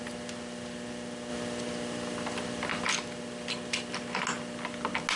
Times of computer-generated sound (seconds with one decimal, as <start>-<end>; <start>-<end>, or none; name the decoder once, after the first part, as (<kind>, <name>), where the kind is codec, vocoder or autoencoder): none